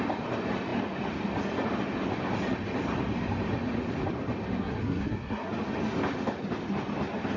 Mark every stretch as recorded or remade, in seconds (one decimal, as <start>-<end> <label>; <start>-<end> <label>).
0.0-4.6 recorded; 4.6-5.5 remade; 5.5-7.4 recorded